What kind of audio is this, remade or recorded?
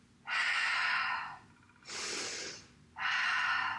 recorded